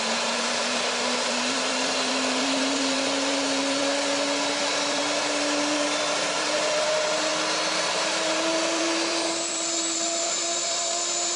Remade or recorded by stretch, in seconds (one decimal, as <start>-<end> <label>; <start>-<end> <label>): 0.0-3.8 remade; 3.8-4.6 recorded; 4.6-7.3 remade; 7.3-7.9 recorded; 7.9-11.4 remade